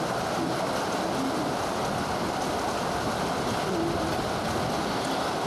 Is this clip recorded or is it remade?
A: recorded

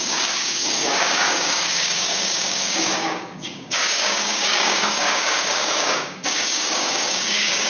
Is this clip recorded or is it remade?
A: remade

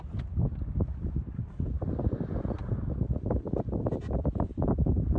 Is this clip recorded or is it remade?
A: recorded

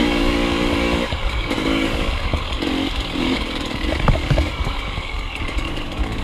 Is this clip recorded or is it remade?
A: remade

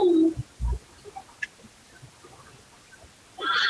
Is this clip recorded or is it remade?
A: recorded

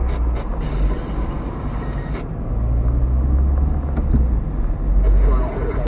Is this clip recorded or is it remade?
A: recorded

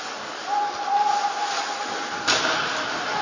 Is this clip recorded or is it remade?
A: recorded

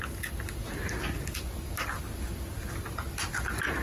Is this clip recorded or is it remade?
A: recorded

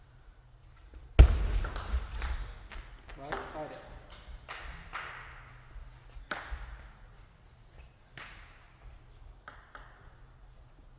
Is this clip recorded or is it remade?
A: recorded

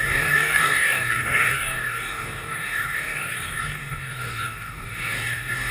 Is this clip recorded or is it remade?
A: remade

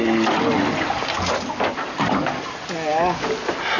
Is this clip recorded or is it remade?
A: recorded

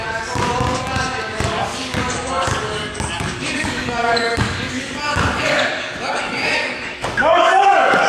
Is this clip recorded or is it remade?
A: remade